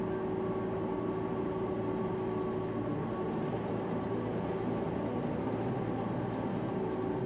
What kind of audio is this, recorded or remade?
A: recorded